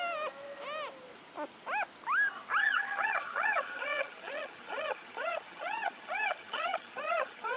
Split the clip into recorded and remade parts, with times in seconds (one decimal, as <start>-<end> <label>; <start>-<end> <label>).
0.0-2.6 recorded; 2.6-7.6 remade

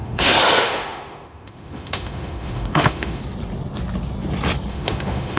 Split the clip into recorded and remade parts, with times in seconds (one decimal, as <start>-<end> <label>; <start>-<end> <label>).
0.0-3.2 remade; 3.2-4.7 recorded; 4.7-5.4 remade

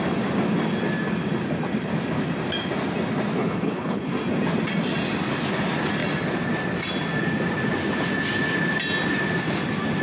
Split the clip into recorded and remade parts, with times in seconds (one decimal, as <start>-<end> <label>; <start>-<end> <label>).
0.0-3.4 recorded; 3.4-4.1 remade; 4.1-10.0 recorded